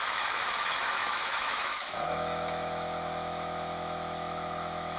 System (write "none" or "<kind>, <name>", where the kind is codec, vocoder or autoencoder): autoencoder, DAC-VAE